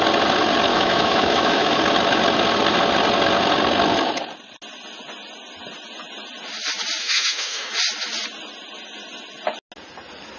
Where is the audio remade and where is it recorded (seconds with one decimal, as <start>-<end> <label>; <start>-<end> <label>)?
0.0-0.7 recorded; 0.7-1.8 remade; 1.8-7.0 recorded; 7.0-7.7 remade; 7.7-10.4 recorded